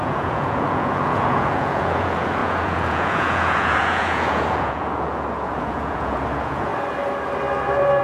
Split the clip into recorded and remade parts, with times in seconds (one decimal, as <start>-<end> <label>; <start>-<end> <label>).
0.0-6.7 remade; 6.7-8.0 recorded